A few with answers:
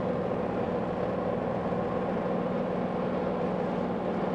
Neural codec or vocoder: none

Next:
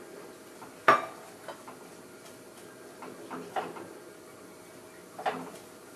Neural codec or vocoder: none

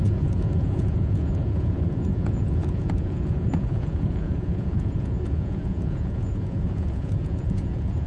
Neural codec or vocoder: vocoder, Vocos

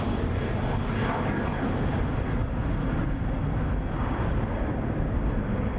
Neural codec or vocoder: none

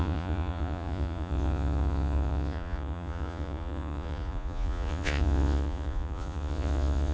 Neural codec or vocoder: vocoder, Vocos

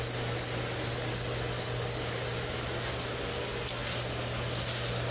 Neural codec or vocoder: none